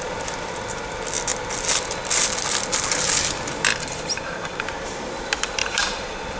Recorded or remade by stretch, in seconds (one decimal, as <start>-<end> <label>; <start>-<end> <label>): 0.0-3.7 recorded; 3.7-4.6 remade; 4.6-5.6 recorded; 5.6-6.4 remade